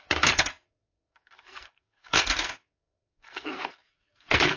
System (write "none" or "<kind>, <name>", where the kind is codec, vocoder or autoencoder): codec, SNAC